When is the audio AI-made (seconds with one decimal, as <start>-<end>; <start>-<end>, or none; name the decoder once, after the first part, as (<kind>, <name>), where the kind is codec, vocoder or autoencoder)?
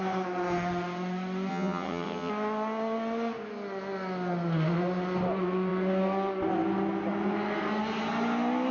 1.5-2.3 (vocoder, HiFi-GAN)